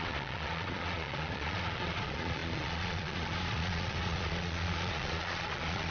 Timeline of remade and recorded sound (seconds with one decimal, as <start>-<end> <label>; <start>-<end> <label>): 0.0-5.9 remade